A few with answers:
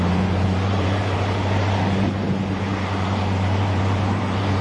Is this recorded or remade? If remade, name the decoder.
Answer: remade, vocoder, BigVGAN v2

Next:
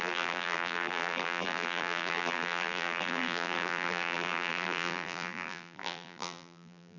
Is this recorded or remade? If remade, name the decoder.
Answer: remade, vocoder, BigVGAN v2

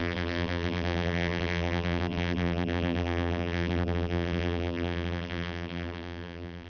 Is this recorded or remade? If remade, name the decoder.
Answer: remade, vocoder, BigVGAN v2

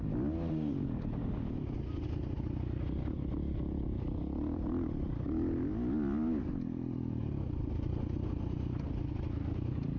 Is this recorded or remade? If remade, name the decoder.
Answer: recorded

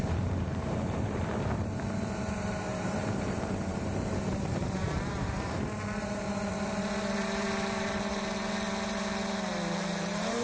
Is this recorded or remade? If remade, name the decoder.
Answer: remade, vocoder, BigVGAN v2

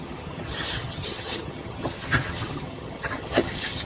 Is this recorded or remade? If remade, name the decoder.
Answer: remade, vocoder, HiFi-GAN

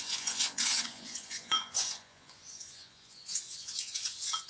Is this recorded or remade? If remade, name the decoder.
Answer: remade, vocoder, Vocos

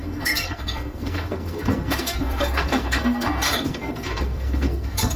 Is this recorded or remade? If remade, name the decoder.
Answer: remade, codec, SNAC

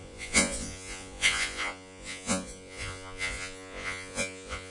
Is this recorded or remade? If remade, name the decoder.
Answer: remade, vocoder, Vocos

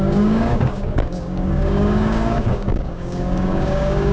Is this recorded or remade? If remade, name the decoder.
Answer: remade, codec, DAC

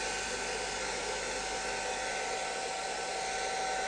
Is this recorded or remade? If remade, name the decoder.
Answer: recorded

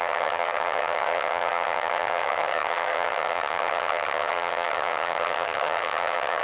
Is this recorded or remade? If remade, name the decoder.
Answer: remade, vocoder, HiFi-GAN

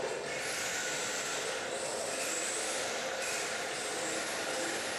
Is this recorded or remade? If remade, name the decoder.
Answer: recorded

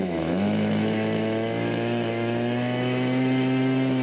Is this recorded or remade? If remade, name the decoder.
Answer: remade, autoencoder, DAC-VAE